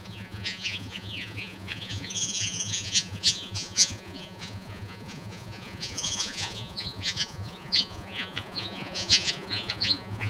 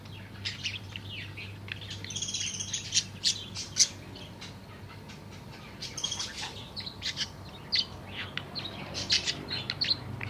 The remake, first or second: first